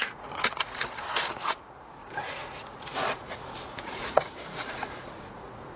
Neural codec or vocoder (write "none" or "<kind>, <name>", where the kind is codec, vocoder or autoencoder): vocoder, Vocos